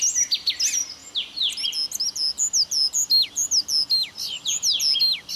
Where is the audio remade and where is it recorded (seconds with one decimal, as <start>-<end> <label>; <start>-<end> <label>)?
0.0-5.4 recorded